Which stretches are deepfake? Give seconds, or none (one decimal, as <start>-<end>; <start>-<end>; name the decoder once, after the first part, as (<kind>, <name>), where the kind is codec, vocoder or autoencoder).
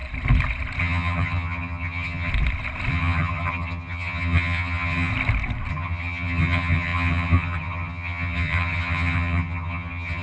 0.8-2.3 (vocoder, HiFi-GAN); 2.9-5.1; 5.7-10.2